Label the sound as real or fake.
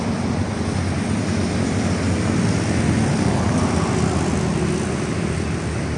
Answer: real